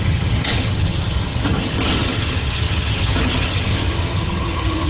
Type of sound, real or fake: fake